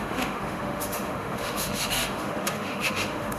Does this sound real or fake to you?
fake